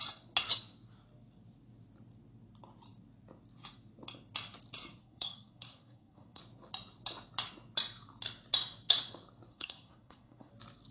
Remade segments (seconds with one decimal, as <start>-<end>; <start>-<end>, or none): 5.0-6.4; 9.5-10.5